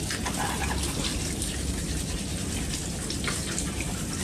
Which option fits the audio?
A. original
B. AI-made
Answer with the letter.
A